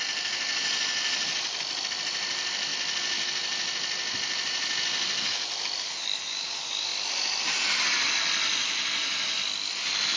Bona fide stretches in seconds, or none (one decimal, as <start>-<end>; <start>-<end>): 0.0-10.2